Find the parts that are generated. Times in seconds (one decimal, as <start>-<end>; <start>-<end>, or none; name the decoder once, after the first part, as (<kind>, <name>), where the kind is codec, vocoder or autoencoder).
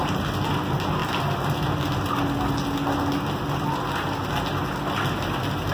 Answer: none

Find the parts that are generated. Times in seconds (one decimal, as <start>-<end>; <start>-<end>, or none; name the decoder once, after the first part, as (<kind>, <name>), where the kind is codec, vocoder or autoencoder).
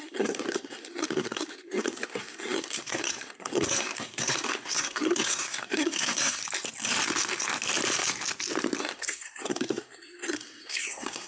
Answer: 0.0-6.4 (codec, SNAC); 8.8-11.3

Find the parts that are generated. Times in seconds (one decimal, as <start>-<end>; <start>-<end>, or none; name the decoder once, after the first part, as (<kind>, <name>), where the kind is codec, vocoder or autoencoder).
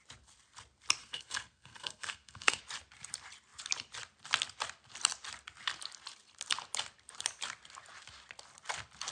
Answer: 1.0-2.6 (codec, SNAC)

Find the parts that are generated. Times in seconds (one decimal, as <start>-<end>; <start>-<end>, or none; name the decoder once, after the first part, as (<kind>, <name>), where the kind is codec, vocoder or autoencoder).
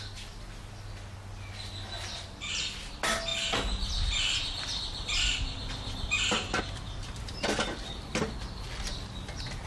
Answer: none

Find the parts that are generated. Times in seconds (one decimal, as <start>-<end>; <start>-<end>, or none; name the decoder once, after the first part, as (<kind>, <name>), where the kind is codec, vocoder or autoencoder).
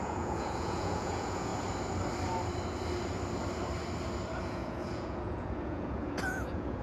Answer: 0.0-1.5 (vocoder, Vocos); 4.4-6.8